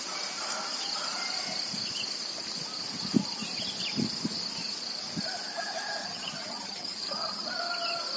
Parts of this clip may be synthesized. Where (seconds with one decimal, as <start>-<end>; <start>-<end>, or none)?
6.0-7.6